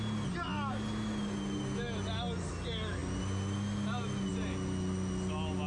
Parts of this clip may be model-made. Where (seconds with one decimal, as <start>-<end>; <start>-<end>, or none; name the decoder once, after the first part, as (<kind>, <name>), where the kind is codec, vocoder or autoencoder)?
none